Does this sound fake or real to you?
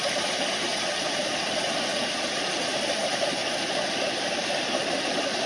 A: real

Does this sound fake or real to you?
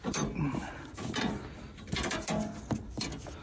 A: real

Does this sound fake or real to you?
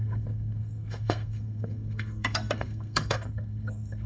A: fake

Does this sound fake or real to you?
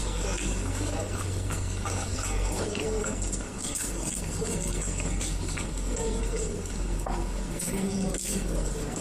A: fake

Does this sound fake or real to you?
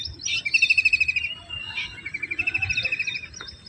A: real